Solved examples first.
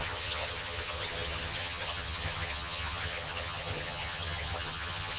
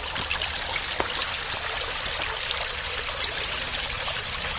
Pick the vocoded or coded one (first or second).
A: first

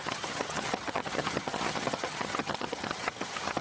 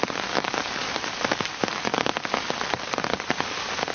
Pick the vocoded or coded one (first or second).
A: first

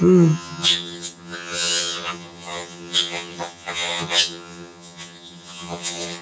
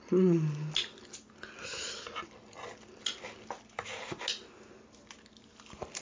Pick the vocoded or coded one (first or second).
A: first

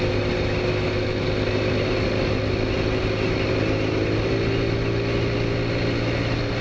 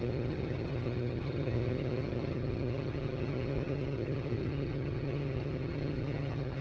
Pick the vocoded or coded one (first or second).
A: second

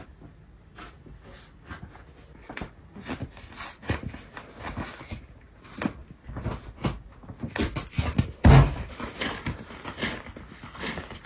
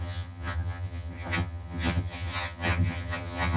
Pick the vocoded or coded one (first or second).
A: second